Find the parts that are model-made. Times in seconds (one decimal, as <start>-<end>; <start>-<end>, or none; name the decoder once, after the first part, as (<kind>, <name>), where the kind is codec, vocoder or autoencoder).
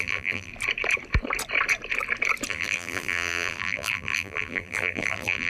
0.0-0.5 (vocoder, BigVGAN v2); 2.5-5.5